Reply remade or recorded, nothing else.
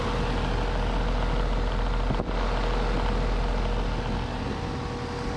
recorded